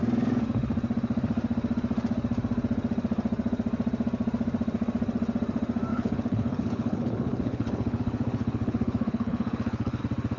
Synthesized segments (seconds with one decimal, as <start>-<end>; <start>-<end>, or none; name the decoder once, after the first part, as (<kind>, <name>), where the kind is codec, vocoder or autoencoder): 5.9-10.0 (codec, HILCodec)